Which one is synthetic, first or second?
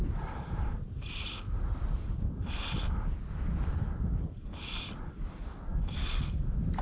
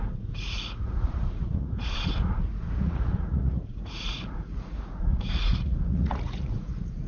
second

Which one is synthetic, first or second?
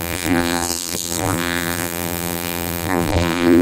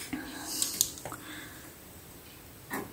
first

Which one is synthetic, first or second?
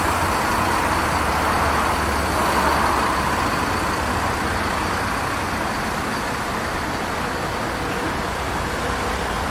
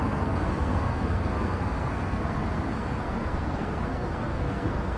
second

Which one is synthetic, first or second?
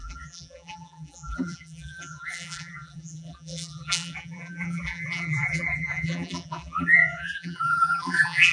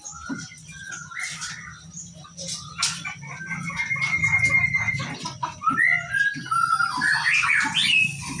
first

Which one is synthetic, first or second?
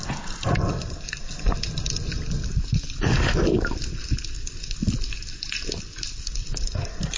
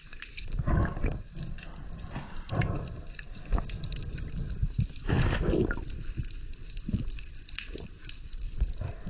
second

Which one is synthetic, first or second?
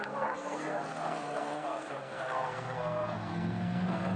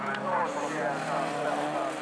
first